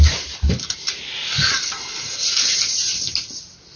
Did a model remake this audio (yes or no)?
no